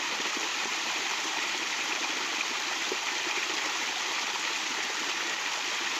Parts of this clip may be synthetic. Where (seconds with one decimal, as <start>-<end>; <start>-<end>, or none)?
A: 0.5-1.9